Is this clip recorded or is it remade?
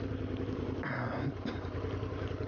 recorded